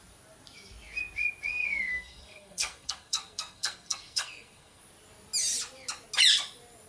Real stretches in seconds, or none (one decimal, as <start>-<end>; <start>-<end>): 0.0-1.5; 4.8-6.9

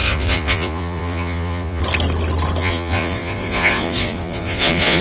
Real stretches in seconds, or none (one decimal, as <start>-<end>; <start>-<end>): 1.8-2.6

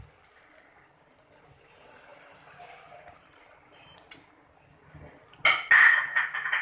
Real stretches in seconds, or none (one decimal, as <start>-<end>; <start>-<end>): 0.0-6.6

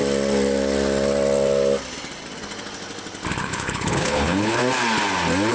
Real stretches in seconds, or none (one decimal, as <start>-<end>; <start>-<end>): 0.0-3.3; 4.6-5.5

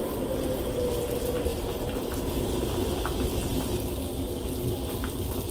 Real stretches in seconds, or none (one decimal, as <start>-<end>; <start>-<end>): 0.0-1.5; 2.0-5.5

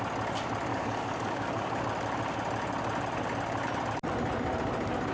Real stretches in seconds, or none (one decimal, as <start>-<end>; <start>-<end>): 0.0-0.7; 1.8-5.1

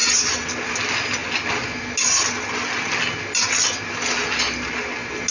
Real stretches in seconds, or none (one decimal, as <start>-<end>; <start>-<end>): 0.0-5.3